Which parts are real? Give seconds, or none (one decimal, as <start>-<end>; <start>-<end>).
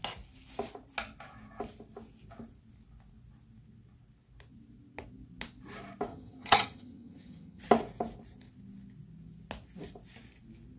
0.0-6.1; 7.6-10.8